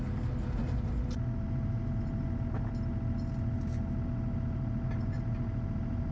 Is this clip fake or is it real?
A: real